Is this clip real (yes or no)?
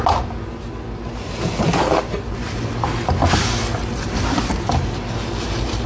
yes